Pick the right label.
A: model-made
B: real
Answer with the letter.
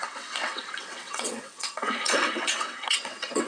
A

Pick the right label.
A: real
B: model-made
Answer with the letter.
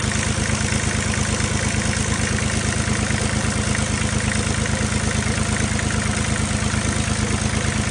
A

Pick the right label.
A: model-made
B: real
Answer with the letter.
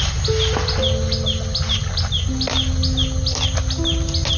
B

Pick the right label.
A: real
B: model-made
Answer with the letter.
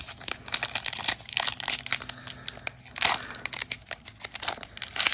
A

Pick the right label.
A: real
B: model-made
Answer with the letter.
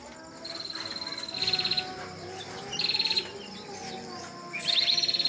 A